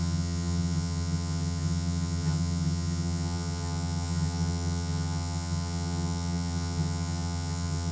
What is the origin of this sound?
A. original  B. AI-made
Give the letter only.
B